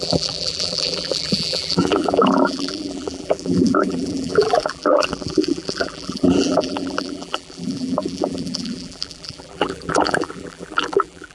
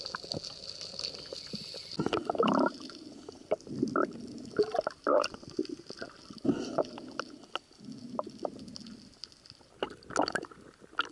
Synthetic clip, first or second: first